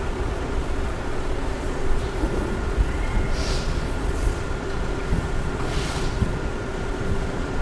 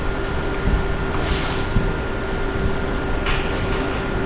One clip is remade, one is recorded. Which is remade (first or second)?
first